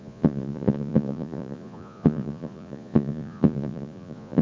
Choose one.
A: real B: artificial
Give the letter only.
B